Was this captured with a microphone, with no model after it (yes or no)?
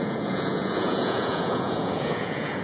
no